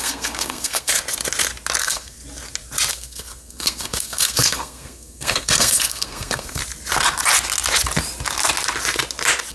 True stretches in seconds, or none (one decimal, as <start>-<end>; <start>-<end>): 0.9-1.8; 2.2-2.9; 6.6-9.5